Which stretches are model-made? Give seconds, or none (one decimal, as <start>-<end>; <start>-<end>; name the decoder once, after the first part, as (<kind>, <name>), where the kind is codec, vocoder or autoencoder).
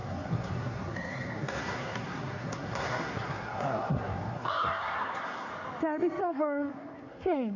0.0-5.5 (codec, SNAC); 6.2-7.6